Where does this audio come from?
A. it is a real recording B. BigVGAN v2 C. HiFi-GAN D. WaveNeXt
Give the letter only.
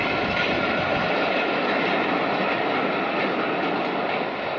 A